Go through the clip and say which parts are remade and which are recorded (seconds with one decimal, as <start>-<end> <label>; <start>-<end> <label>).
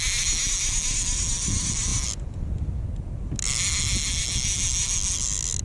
0.0-5.6 recorded